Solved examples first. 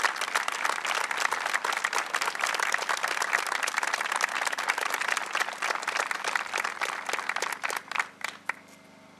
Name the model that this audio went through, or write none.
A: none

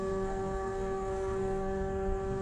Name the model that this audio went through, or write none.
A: codec, SNAC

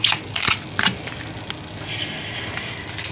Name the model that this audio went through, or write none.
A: none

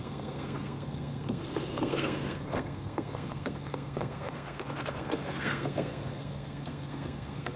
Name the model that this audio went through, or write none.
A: codec, SNAC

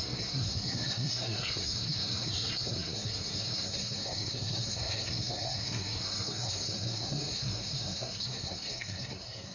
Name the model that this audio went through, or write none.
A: codec, SNAC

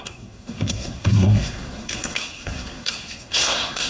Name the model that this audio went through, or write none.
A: codec, SNAC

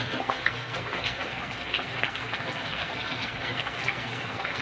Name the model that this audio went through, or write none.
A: codec, SNAC